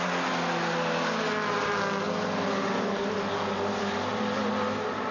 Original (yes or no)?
yes